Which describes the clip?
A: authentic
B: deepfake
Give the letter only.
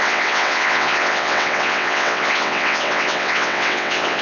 B